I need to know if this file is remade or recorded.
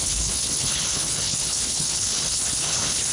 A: remade